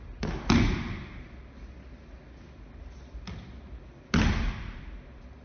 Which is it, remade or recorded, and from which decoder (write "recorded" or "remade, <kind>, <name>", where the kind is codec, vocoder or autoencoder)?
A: recorded